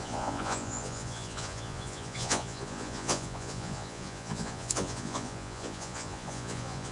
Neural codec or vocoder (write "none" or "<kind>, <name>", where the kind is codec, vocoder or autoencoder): vocoder, Vocos